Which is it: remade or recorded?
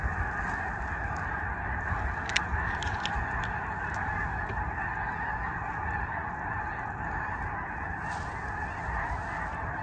recorded